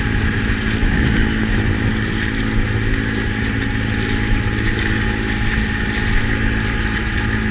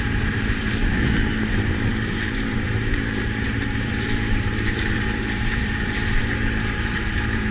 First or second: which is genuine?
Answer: first